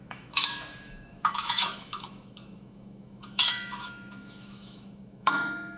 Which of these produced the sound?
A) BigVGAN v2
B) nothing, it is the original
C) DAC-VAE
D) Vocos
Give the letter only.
C